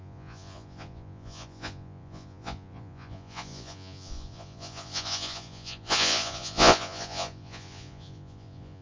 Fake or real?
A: fake